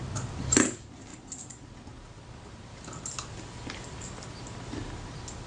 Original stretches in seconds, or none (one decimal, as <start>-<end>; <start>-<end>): 0.0-5.5